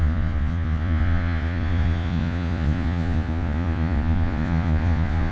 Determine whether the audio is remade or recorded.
remade